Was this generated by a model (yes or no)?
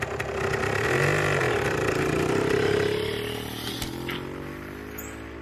no